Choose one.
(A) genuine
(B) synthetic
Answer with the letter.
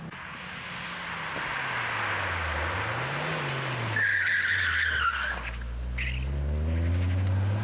A